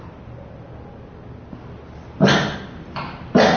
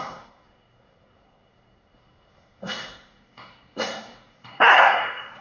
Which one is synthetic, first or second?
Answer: second